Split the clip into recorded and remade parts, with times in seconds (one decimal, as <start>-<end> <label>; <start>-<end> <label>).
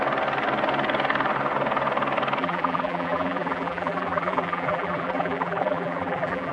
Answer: 0.0-2.4 recorded; 2.4-6.5 remade